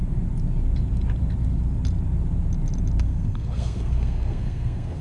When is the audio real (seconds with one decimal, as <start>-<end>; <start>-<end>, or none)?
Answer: 0.0-3.0